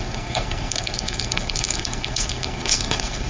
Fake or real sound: fake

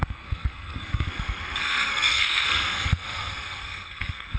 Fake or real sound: fake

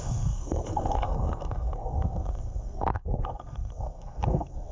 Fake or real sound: fake